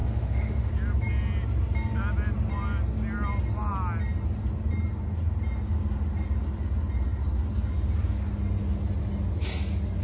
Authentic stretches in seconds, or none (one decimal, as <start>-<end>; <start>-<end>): 0.7-10.0